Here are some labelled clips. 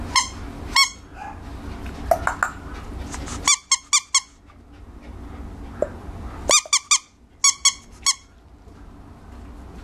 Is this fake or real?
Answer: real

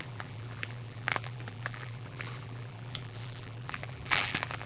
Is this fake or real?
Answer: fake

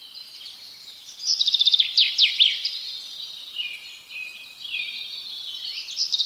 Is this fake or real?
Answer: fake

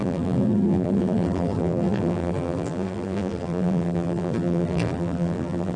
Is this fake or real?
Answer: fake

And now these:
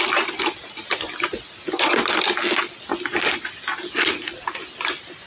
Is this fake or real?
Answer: real